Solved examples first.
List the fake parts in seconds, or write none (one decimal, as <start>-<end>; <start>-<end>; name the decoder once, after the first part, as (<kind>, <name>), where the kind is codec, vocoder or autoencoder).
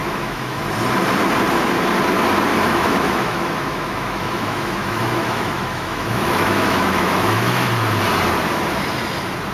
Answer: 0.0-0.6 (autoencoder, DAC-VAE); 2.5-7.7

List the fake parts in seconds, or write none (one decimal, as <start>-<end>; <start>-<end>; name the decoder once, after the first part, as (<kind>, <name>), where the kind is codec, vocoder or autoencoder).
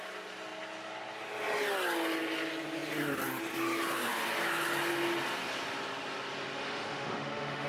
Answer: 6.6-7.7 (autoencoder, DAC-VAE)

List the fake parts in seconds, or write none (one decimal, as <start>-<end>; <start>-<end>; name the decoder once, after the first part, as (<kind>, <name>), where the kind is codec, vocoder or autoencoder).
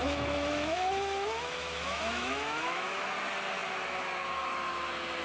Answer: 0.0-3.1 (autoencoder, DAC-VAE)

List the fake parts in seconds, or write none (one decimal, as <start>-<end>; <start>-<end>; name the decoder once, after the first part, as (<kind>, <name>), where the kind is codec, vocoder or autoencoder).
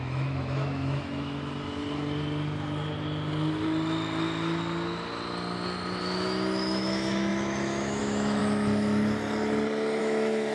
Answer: 0.0-1.8 (autoencoder, DAC-VAE); 6.0-8.4; 10.0-10.5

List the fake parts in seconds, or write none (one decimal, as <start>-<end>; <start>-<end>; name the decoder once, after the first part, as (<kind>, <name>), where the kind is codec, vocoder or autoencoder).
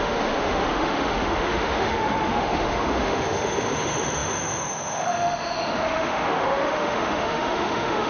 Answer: 0.0-8.1 (autoencoder, DAC-VAE)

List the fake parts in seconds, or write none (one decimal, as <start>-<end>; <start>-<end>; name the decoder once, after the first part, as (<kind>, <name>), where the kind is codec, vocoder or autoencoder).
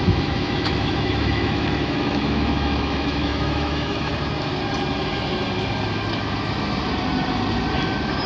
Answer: 0.0-4.1 (autoencoder, DAC-VAE)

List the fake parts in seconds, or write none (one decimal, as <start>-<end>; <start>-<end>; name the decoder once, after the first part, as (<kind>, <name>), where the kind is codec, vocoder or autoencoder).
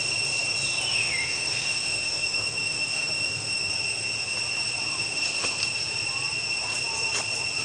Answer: 0.9-3.7 (autoencoder, DAC-VAE); 4.9-5.6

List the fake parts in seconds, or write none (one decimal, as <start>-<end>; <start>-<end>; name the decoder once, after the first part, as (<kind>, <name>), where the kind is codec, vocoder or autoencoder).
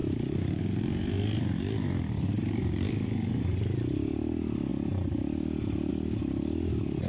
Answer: none